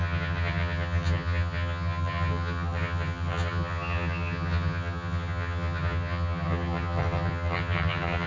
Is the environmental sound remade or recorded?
remade